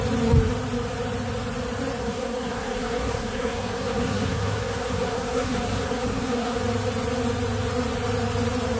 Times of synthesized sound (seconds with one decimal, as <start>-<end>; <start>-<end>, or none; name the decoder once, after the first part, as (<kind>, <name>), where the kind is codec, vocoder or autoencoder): 2.0-6.6 (codec, SNAC)